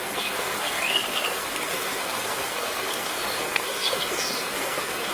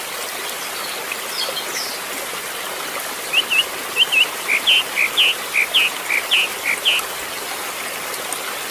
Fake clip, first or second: first